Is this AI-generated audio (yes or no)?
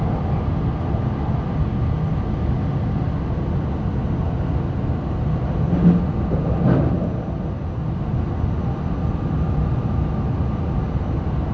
no